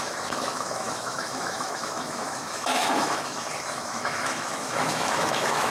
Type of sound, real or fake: fake